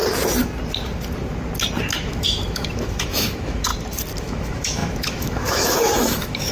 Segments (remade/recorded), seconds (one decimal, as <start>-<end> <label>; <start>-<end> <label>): 0.0-1.9 recorded; 1.9-3.7 remade; 3.7-4.2 recorded; 4.2-6.5 remade